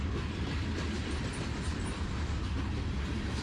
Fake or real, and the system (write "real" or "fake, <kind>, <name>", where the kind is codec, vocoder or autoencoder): fake, vocoder, BigVGAN v2